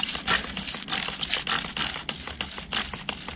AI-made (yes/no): no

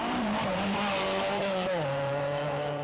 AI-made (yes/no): yes